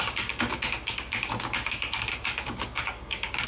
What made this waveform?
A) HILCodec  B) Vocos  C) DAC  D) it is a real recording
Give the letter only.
C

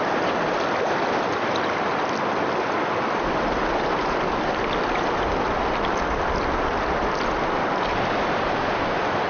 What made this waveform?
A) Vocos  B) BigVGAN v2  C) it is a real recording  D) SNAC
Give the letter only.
C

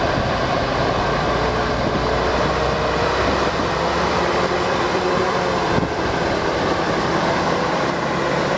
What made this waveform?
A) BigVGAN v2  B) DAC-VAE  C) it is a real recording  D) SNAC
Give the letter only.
A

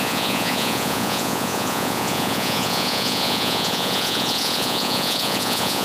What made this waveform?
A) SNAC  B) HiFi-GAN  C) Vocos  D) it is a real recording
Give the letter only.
C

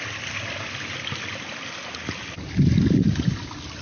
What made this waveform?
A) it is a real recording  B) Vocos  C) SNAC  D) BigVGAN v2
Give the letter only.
A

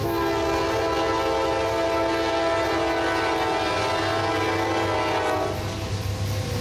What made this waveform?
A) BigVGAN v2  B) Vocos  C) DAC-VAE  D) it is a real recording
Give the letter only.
D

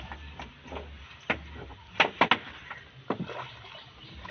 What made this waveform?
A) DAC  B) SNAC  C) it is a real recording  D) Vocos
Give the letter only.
C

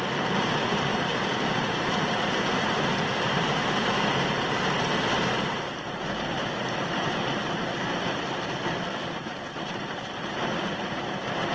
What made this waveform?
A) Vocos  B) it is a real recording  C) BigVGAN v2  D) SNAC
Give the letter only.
C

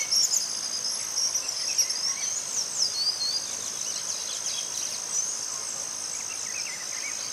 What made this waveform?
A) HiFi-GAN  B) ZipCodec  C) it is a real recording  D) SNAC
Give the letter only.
C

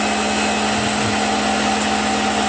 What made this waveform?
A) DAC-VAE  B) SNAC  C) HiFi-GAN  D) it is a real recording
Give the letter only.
D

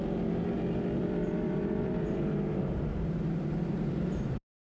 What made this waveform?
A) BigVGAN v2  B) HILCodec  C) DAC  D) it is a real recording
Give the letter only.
A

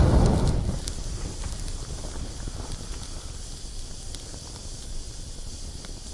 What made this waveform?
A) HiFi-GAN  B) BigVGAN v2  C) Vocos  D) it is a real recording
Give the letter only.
D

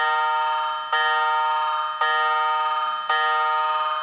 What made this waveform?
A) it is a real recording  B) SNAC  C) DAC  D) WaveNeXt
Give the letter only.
A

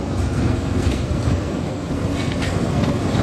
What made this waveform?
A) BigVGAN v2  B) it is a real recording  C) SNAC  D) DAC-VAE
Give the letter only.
C